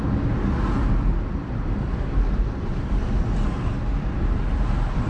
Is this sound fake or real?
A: real